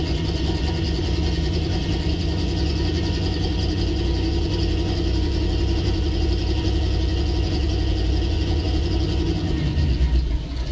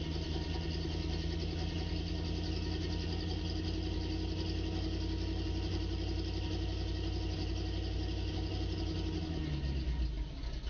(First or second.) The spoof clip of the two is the first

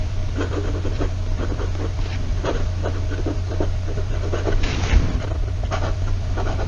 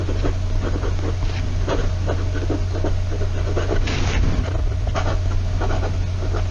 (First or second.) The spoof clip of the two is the first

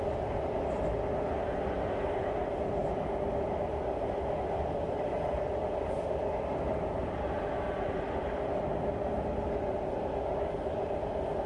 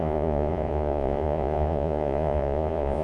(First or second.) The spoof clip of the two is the second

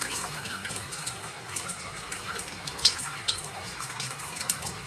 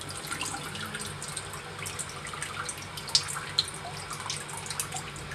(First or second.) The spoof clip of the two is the first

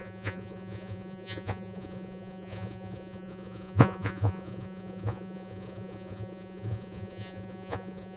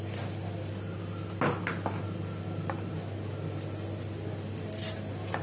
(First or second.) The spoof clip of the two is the first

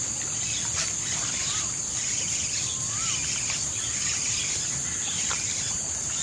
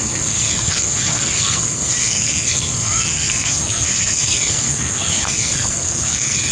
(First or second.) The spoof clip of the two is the second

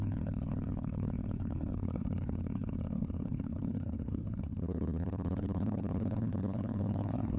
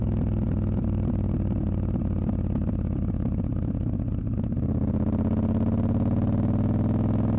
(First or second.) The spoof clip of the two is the first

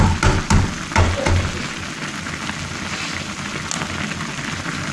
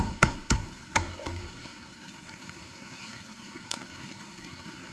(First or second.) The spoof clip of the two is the second